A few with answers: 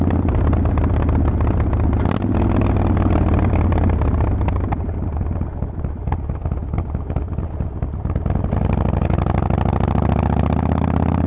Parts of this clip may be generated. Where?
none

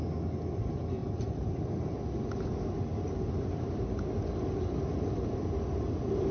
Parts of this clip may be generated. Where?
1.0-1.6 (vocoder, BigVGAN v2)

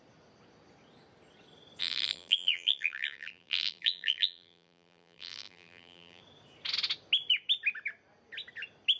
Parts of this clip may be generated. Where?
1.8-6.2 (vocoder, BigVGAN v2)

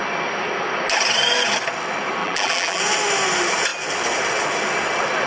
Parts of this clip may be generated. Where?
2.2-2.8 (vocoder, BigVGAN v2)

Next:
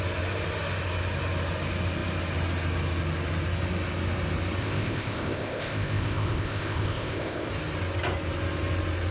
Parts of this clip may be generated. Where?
4.6-7.5 (codec, ZipCodec)